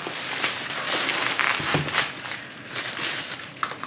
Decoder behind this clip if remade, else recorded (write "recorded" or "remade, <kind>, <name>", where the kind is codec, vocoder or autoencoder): recorded